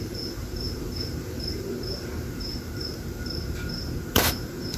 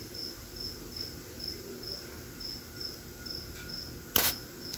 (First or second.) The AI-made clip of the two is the first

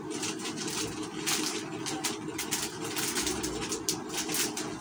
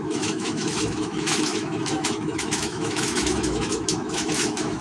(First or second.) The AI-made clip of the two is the second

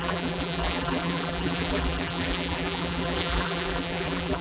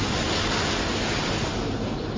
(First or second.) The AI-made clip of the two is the first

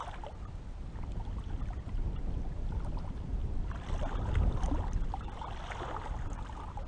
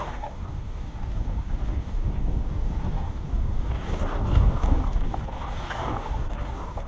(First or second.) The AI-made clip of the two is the second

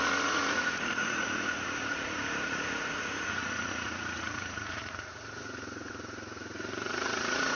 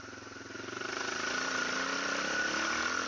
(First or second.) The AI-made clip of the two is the first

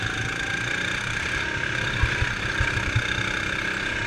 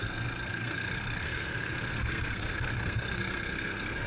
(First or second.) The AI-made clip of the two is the second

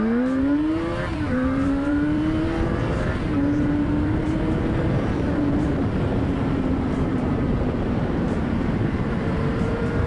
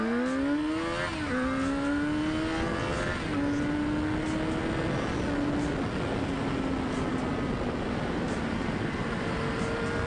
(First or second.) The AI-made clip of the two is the first